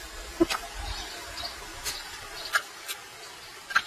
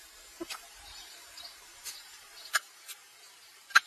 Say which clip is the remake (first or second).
second